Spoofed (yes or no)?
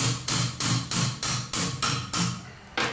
no